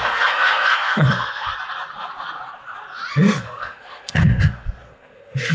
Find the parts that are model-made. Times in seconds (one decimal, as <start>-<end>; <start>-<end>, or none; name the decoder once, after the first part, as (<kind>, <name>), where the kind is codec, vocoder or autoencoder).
0.0-1.5 (codec, SNAC); 3.1-5.5

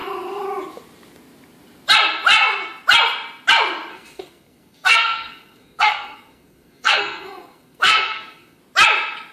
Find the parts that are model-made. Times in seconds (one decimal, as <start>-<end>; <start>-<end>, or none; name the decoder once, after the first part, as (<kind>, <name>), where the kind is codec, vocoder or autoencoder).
3.9-8.6 (codec, SNAC)